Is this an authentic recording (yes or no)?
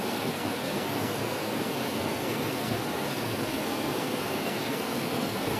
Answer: no